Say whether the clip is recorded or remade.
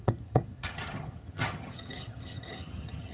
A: remade